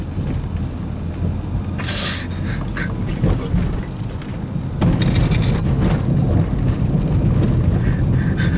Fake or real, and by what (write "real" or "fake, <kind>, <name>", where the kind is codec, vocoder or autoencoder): real